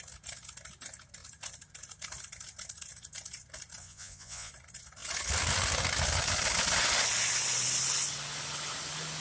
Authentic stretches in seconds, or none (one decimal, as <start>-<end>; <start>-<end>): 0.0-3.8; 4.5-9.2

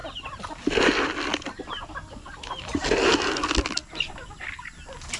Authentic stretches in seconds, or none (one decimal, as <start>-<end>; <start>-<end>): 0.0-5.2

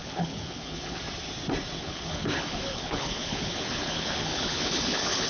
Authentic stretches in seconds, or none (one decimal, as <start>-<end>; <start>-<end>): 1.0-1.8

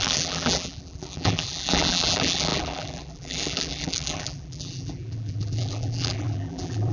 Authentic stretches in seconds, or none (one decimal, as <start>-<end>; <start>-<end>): none